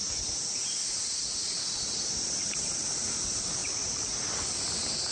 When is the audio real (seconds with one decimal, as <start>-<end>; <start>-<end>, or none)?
0.0-5.1